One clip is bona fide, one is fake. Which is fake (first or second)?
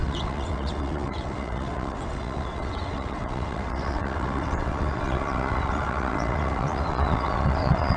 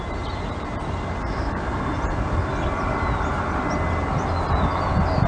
first